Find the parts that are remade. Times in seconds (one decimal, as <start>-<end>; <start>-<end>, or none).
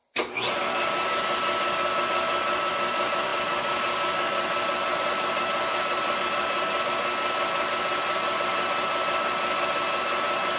none